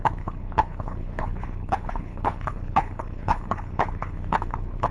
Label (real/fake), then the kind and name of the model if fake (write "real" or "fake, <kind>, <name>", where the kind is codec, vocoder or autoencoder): fake, codec, HILCodec